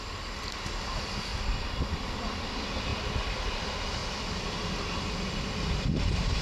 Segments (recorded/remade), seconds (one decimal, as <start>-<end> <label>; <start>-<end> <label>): 0.0-4.0 recorded; 4.0-6.4 remade